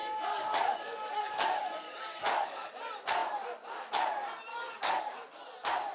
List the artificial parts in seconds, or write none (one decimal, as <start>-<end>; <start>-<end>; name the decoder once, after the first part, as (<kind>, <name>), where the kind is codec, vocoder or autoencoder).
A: 0.0-2.7 (codec, DAC); 4.5-5.0